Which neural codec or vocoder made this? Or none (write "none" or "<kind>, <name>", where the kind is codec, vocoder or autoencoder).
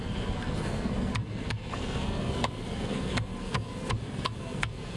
codec, SNAC